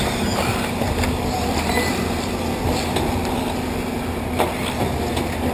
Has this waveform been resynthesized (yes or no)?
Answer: no